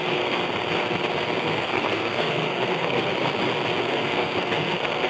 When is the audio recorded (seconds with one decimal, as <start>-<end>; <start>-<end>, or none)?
0.4-1.4; 3.1-3.8